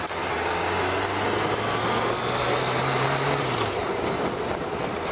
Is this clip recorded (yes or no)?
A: yes